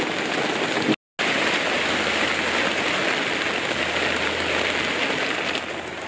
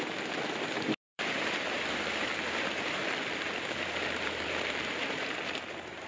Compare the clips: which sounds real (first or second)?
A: first